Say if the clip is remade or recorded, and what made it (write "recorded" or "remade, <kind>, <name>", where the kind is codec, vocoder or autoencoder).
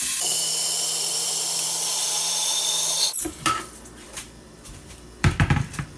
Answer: remade, vocoder, BigVGAN v2